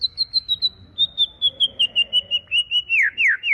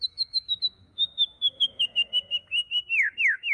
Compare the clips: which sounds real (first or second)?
first